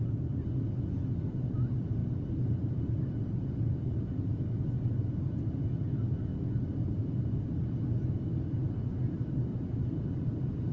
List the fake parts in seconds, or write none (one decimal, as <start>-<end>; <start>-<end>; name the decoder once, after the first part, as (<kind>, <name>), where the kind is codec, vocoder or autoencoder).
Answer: 2.0-4.7 (vocoder, BigVGAN v2); 6.3-7.1; 9.5-10.7